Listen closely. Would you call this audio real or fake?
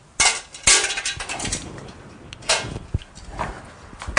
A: real